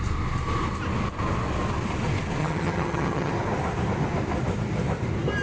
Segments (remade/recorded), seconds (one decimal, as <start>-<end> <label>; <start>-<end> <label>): 0.0-2.4 recorded; 2.4-3.3 remade; 3.3-5.4 recorded